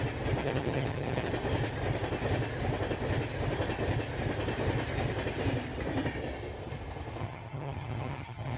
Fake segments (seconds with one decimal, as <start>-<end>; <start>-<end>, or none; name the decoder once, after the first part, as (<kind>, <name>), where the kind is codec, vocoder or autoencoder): 0.4-1.3 (vocoder, HiFi-GAN); 7.2-8.6